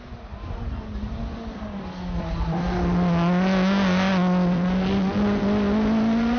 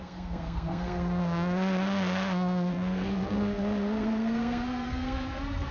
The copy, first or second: second